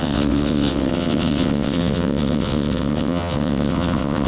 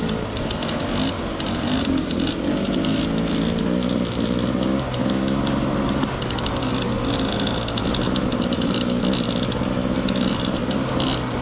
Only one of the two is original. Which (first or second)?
second